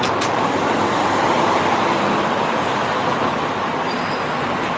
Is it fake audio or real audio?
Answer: real